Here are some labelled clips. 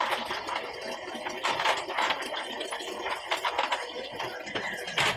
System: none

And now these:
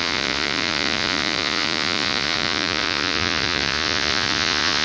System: vocoder, Vocos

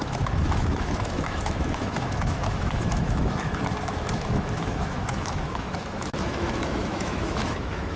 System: autoencoder, DAC-VAE